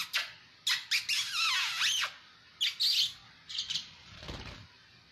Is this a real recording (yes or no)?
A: yes